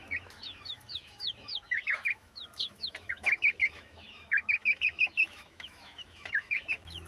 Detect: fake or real fake